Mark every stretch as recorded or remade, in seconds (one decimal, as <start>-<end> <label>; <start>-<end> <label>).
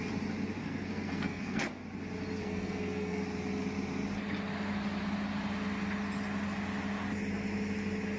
0.0-0.6 recorded; 0.6-1.7 remade; 1.7-2.4 recorded; 2.4-3.2 remade; 3.2-8.2 recorded